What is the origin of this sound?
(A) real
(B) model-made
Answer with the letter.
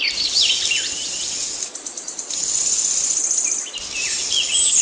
A